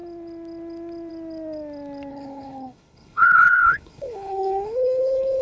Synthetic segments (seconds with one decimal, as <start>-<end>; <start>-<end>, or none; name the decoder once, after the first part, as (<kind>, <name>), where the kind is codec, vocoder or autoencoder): 2.1-5.4 (codec, HILCodec)